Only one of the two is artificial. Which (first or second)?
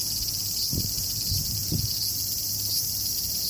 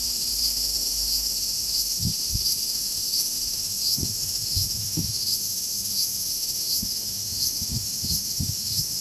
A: second